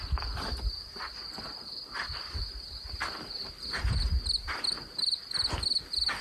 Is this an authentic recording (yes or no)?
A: yes